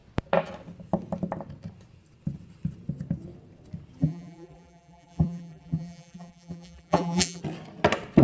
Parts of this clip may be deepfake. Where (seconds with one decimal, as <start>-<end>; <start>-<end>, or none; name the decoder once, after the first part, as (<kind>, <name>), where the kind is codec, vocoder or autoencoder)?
4.0-7.4 (vocoder, BigVGAN v2)